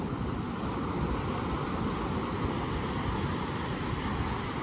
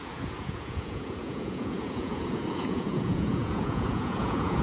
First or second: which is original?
first